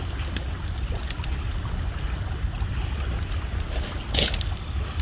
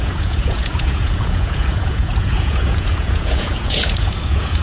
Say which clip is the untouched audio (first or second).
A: first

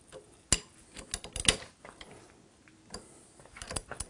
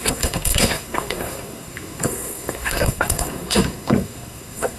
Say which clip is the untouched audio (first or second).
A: first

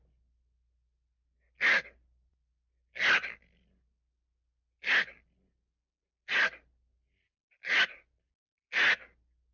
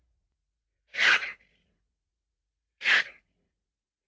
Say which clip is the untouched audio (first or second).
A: first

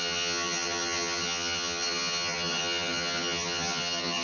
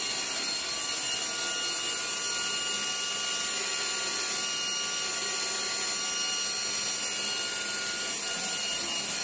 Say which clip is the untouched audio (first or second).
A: second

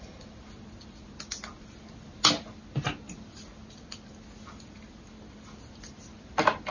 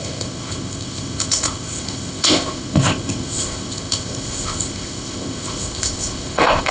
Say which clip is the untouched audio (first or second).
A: first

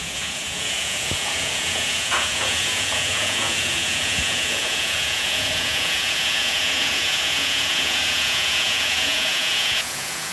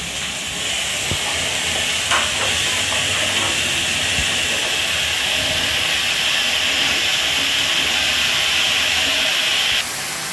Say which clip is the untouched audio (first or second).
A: second